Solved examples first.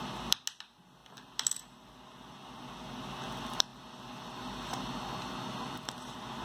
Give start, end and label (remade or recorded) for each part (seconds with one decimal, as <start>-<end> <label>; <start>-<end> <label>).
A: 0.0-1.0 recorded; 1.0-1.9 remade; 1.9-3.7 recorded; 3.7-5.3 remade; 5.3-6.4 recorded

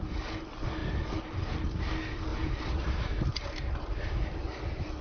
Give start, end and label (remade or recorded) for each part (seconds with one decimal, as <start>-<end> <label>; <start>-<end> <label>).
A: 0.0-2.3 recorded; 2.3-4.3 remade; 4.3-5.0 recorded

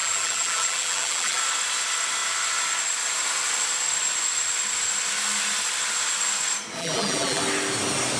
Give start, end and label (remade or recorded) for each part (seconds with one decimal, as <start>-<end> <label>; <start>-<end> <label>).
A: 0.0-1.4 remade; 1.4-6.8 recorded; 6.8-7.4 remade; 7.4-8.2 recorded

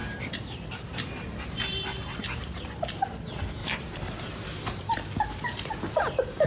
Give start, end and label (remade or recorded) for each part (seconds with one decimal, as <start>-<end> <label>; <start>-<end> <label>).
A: 0.0-1.6 remade; 1.6-3.6 recorded; 3.6-4.8 remade; 4.8-6.5 recorded